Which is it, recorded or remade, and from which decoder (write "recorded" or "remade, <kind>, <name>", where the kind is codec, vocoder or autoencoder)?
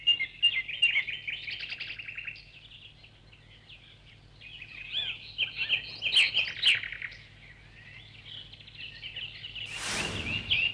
recorded